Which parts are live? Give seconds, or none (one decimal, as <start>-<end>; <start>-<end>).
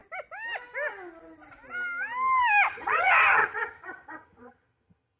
0.0-2.7